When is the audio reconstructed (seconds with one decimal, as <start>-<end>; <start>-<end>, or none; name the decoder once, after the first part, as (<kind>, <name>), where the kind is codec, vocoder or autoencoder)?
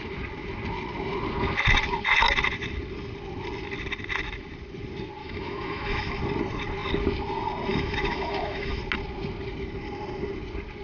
5.2-6.2 (autoencoder, DAC-VAE); 7.7-8.8